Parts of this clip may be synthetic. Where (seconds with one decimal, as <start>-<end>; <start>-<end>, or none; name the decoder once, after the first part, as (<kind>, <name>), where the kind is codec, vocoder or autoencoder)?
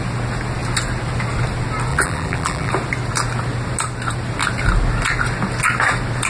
1.9-2.7 (vocoder, BigVGAN v2)